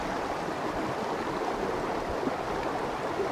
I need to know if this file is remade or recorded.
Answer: recorded